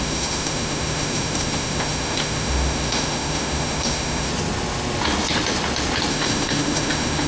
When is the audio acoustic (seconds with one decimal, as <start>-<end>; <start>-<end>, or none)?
4.3-6.1